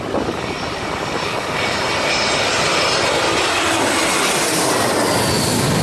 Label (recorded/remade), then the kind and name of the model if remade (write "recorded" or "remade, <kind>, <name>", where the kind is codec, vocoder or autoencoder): recorded